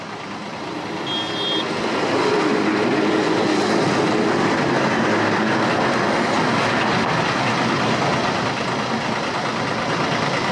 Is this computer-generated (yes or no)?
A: no